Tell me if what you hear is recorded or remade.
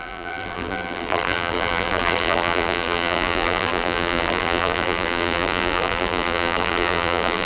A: remade